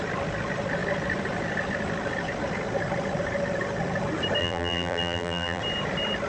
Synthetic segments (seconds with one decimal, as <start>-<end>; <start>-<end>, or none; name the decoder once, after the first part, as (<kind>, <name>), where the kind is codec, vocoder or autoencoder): 4.4-5.6 (vocoder, BigVGAN v2)

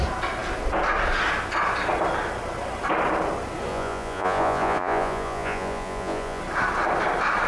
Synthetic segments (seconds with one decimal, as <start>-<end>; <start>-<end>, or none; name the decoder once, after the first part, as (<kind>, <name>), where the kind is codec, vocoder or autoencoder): 3.7-6.4 (vocoder, Vocos)

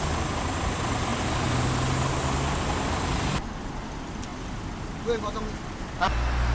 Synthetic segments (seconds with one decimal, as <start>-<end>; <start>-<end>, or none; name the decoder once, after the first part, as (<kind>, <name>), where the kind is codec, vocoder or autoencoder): none

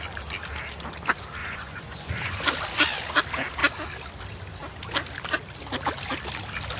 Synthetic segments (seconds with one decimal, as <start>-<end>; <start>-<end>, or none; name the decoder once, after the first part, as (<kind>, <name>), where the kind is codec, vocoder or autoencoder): 1.4-2.4 (vocoder, Vocos)

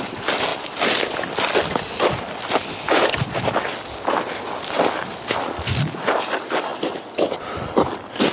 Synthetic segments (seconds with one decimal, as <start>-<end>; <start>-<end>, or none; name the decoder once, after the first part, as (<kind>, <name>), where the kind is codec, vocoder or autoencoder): none